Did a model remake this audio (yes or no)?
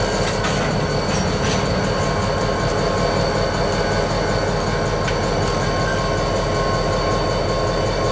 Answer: no